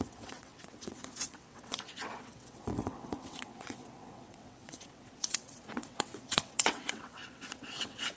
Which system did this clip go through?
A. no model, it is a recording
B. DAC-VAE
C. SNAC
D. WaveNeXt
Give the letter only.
D